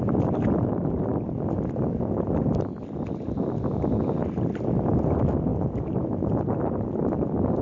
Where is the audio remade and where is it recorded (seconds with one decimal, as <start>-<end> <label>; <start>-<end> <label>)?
0.0-7.6 recorded